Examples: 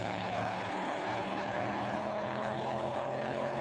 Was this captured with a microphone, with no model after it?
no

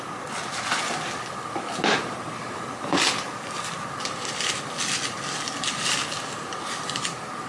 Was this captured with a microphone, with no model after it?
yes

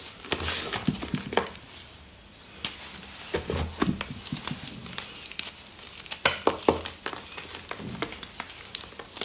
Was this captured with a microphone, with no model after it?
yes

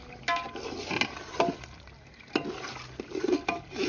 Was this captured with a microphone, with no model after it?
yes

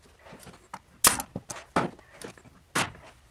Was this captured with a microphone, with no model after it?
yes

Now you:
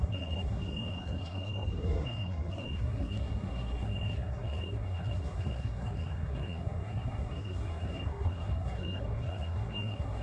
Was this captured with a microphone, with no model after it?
no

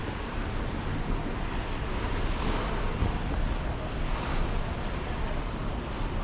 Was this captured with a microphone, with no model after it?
yes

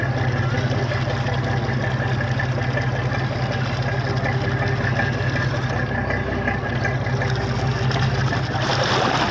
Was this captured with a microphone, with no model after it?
yes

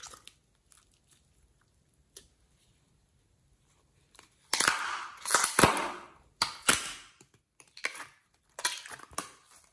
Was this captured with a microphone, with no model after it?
yes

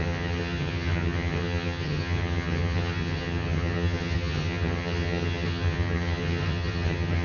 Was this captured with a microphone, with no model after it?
no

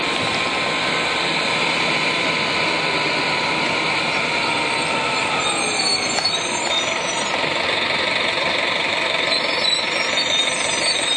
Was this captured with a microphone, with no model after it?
yes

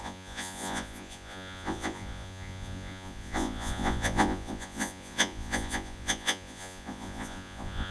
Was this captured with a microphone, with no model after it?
no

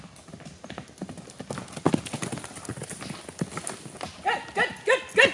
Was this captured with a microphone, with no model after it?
yes